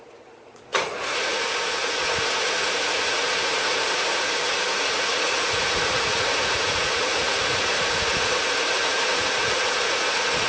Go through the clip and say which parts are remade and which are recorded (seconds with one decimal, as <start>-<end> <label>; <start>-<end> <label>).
0.0-10.5 remade